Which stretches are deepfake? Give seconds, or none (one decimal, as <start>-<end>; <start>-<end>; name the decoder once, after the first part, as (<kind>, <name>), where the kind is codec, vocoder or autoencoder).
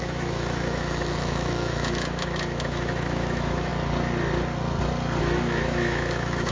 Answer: 0.0-3.7 (autoencoder, DAC-VAE); 5.2-6.5